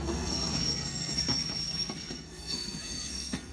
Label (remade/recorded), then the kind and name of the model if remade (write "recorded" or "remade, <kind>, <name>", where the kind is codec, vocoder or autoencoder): remade, codec, SNAC